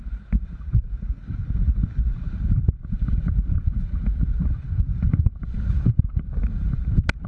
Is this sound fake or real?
fake